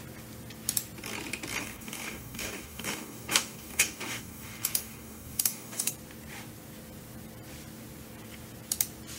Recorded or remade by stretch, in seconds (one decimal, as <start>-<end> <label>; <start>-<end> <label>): 0.0-1.6 recorded; 1.6-5.9 remade; 5.9-9.2 recorded